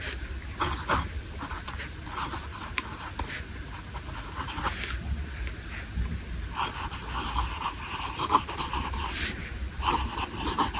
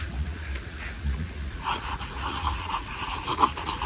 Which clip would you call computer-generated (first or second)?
second